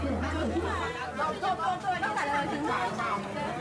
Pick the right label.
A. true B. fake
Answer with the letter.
A